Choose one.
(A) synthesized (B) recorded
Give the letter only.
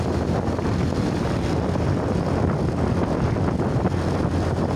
B